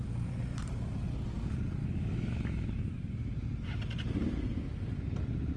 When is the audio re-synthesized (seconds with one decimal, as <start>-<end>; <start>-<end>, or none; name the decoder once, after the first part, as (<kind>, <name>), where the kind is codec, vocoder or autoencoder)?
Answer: 1.8-3.3 (autoencoder, DAC-VAE)